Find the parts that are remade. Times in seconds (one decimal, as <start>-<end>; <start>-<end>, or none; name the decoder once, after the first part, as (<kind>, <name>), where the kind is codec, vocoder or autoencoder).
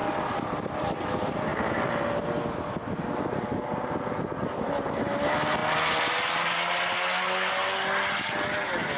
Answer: none